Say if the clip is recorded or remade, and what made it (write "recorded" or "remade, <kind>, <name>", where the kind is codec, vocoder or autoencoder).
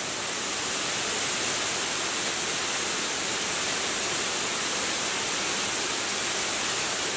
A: recorded